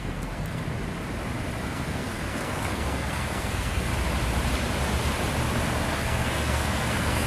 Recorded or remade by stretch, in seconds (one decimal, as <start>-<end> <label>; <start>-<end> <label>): 0.0-0.6 remade; 0.6-1.6 recorded; 1.6-3.9 remade; 3.9-5.9 recorded; 5.9-7.3 remade